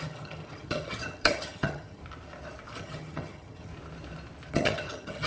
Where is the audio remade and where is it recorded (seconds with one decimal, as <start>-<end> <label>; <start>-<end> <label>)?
0.0-2.0 remade; 2.0-2.8 recorded; 2.8-3.7 remade; 3.7-4.5 recorded; 4.5-5.3 remade